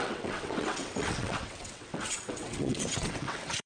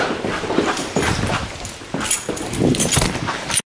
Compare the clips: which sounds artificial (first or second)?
first